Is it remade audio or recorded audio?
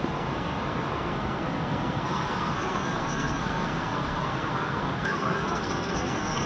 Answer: remade